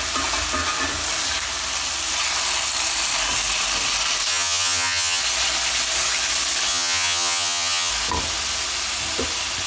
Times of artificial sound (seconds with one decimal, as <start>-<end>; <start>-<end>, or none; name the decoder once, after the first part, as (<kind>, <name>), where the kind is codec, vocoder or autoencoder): 4.3-5.2 (vocoder, HiFi-GAN); 6.7-7.9